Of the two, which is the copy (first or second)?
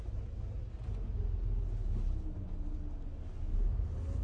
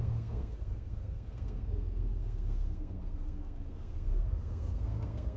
second